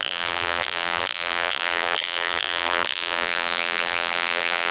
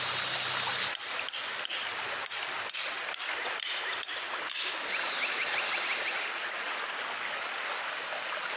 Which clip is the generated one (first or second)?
first